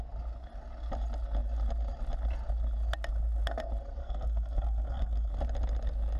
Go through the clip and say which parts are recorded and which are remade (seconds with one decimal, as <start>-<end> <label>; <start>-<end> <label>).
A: 0.0-4.0 recorded; 4.0-5.3 remade; 5.3-6.2 recorded